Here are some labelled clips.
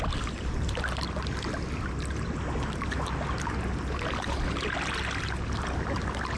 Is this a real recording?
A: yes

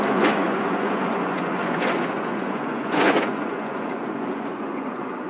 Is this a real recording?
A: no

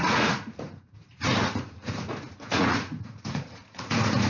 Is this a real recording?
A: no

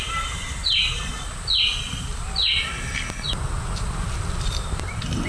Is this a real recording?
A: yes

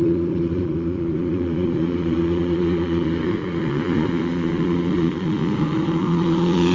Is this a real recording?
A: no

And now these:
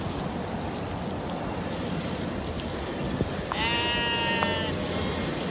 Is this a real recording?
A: yes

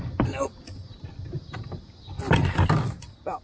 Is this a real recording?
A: yes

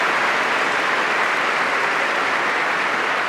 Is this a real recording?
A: yes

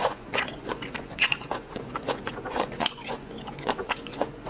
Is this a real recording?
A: no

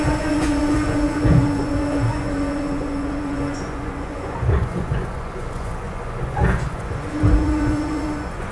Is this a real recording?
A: no